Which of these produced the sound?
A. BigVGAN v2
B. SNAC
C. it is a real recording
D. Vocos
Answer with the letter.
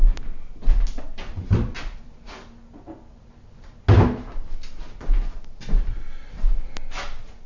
C